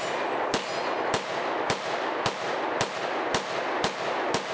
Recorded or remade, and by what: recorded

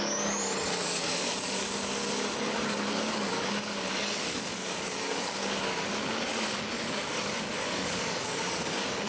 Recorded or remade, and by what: remade, codec, DAC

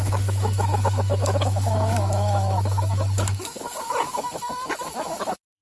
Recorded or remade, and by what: remade, autoencoder, DAC-VAE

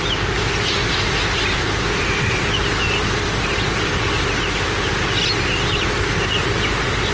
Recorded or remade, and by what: recorded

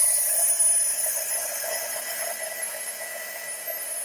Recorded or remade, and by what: recorded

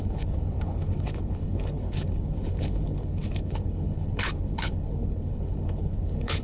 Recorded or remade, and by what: remade, codec, HILCodec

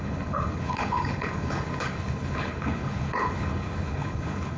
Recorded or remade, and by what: remade, codec, HILCodec